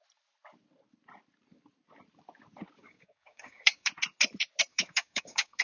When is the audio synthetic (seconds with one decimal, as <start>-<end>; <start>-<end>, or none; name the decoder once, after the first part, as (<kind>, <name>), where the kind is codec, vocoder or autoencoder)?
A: 2.8-3.9 (codec, DAC); 4.7-5.6